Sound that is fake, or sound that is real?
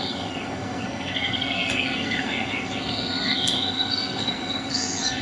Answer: fake